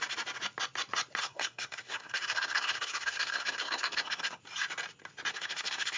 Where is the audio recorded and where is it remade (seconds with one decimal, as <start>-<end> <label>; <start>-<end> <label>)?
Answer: 0.0-1.2 recorded; 1.2-4.4 remade; 4.4-5.3 recorded; 5.3-6.0 remade